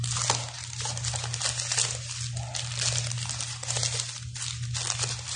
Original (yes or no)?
yes